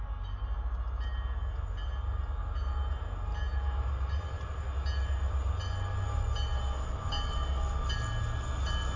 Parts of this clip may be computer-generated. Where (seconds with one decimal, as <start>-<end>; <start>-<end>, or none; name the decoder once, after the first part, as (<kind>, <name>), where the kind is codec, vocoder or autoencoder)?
none